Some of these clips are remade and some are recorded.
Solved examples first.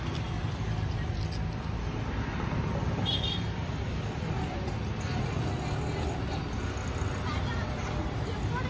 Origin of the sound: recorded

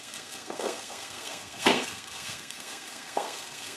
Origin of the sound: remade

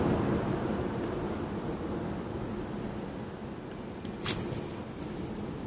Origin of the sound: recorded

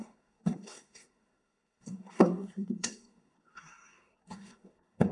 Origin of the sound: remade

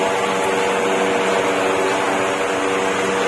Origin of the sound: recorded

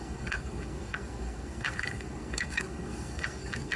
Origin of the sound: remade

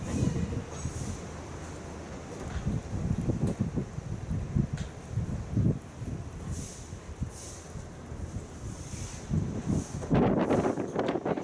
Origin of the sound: recorded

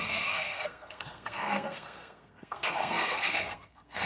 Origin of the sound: remade